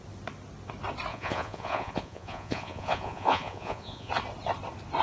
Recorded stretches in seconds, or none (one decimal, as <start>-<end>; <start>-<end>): 0.0-1.1; 4.1-5.0